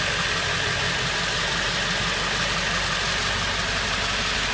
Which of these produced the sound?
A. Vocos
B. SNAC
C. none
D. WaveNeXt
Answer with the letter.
C